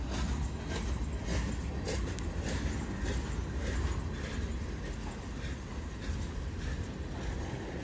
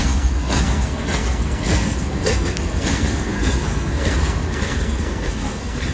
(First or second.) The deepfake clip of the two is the second